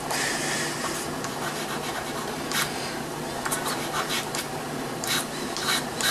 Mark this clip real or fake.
fake